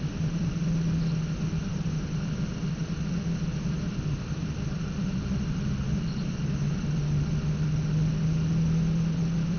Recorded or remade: recorded